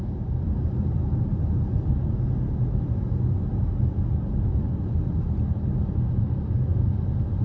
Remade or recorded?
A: recorded